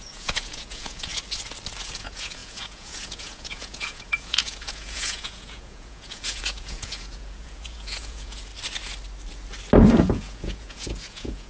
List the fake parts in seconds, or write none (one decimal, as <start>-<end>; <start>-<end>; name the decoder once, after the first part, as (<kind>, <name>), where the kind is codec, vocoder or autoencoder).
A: 0.0-1.1 (vocoder, Vocos); 1.8-8.5; 10.1-11.5